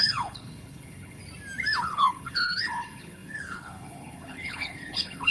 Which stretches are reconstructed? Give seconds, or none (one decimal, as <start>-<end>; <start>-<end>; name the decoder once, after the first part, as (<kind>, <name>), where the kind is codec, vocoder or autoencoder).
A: 0.0-1.2 (codec, HILCodec); 1.8-5.3